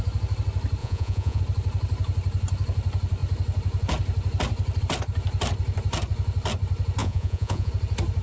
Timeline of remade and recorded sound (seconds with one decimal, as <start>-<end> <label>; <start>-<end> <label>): 0.0-0.8 recorded; 0.8-1.4 remade; 1.4-7.0 recorded; 7.0-7.7 remade; 7.7-8.2 recorded